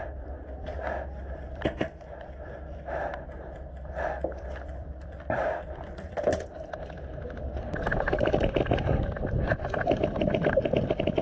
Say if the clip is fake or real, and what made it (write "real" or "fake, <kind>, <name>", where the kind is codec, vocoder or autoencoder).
fake, vocoder, BigVGAN v2